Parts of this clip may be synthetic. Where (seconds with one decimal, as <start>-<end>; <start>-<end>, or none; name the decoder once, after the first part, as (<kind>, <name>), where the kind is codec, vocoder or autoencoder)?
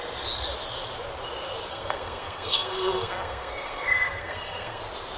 1.7-4.8 (codec, SNAC)